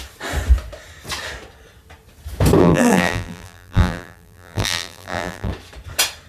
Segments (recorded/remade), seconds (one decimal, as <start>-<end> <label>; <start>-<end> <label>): 0.0-2.6 recorded; 2.6-5.5 remade; 5.5-6.3 recorded